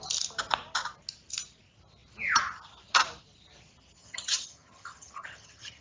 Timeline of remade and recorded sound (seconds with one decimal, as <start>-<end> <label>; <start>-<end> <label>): 0.0-4.0 recorded; 4.0-5.8 remade